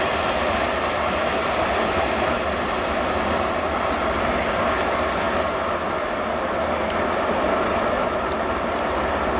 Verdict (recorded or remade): recorded